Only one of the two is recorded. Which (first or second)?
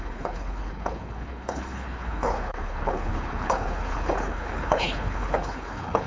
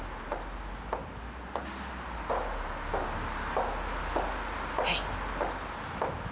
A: second